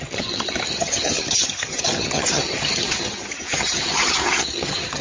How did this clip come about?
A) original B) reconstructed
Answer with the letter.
B